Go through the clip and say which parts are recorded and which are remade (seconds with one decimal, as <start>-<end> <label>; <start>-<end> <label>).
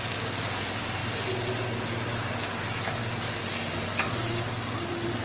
0.0-5.2 recorded